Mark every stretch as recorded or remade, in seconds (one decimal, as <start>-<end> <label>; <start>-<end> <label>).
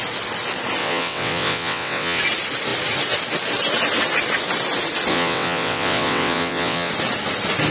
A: 0.0-0.8 recorded; 0.8-2.2 remade; 2.2-5.1 recorded; 5.1-6.9 remade; 6.9-7.7 recorded